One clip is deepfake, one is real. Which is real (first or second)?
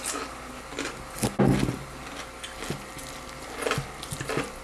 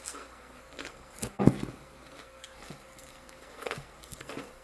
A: first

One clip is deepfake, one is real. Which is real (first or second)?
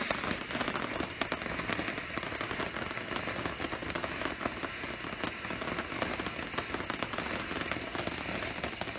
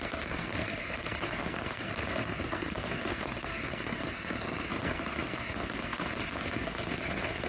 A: first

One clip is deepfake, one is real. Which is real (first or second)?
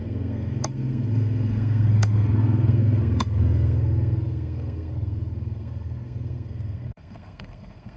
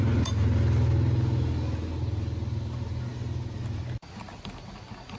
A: second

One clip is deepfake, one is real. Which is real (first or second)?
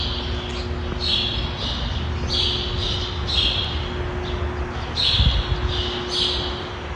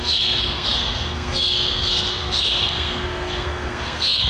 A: first